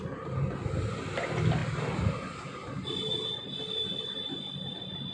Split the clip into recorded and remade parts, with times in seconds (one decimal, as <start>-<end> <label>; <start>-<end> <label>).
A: 0.0-5.1 recorded